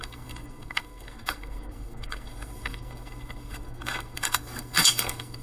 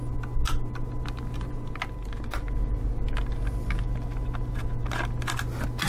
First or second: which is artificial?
first